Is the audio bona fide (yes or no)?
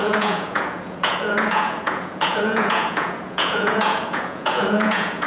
no